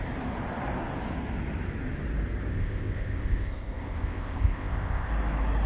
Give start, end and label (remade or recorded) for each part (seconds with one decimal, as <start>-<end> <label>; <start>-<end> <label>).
0.0-2.5 recorded; 2.5-5.1 remade; 5.1-5.7 recorded